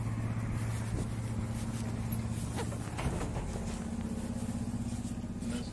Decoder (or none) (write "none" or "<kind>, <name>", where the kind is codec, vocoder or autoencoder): none